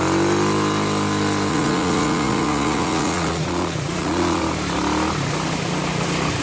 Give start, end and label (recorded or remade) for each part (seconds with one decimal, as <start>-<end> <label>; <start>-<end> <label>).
0.0-1.5 recorded; 1.5-4.4 remade; 4.4-6.4 recorded